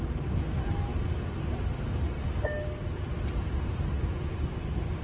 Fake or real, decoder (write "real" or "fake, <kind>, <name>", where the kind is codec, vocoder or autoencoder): real